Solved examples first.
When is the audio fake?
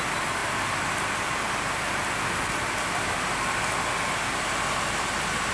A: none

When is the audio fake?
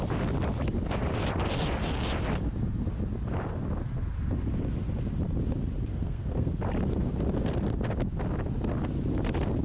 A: 5.9-6.5 (codec, SNAC)